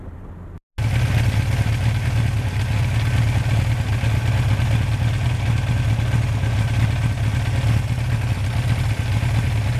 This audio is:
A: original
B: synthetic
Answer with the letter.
A